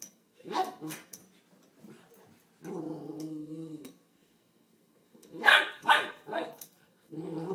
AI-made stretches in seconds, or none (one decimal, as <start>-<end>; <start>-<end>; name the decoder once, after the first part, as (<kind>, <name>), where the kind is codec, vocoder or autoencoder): 0.0-1.2 (codec, SNAC); 2.8-7.5